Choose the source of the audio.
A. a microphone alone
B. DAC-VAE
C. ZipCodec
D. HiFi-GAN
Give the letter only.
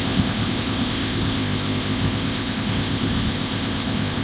C